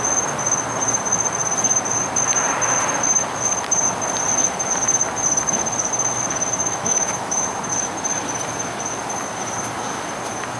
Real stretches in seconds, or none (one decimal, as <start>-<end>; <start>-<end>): 0.0-6.6; 7.6-10.6